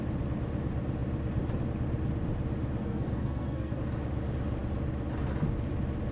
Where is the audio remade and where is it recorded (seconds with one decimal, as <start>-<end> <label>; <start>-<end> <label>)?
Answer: 0.0-2.8 recorded; 2.8-3.8 remade; 3.8-6.1 recorded